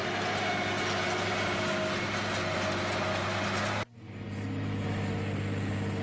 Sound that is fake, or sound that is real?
real